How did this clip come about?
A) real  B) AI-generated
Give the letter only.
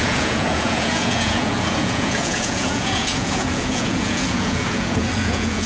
B